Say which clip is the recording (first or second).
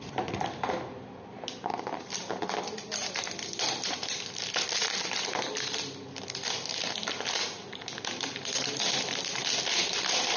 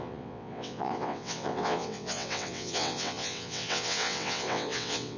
first